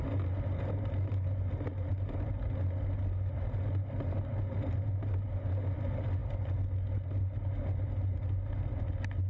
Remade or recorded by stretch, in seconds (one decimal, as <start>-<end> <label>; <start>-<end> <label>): 0.0-9.3 recorded